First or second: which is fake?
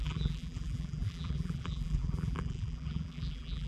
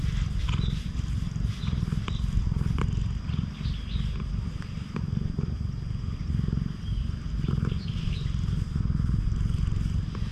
first